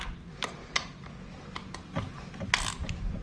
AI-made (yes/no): no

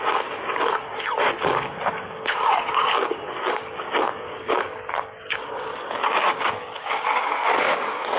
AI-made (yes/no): yes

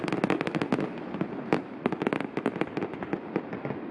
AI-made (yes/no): no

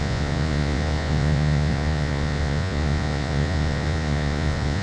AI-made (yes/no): yes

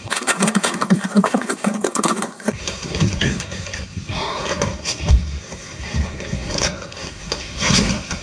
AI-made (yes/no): yes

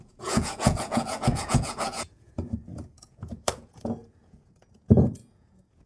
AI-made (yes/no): yes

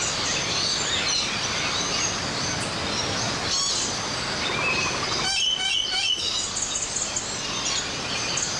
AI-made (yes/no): no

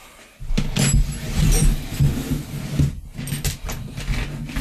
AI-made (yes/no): no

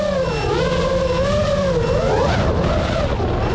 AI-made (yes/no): no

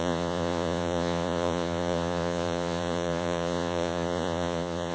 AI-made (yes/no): yes